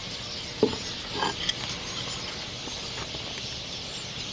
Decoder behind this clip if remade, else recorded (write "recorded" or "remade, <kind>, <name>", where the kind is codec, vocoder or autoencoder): recorded